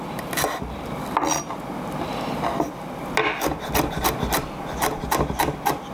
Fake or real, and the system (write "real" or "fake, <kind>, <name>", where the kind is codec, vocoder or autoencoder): real